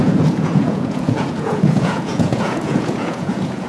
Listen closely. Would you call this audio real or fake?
fake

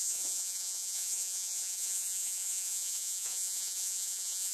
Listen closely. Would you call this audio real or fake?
fake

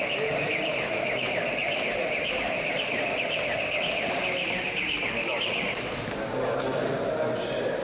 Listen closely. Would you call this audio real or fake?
real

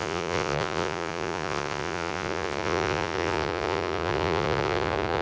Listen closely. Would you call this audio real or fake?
fake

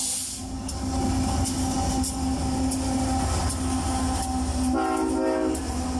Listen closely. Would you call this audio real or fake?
real